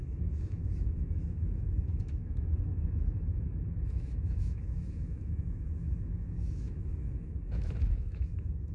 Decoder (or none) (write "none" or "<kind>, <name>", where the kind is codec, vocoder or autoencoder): autoencoder, DAC-VAE